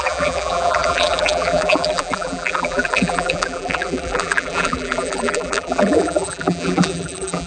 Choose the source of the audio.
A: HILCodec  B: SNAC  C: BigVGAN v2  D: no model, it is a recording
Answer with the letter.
C